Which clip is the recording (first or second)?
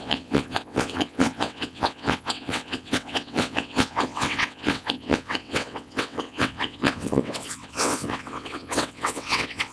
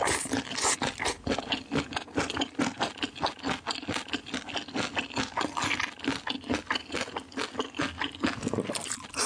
second